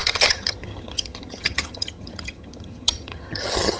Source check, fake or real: fake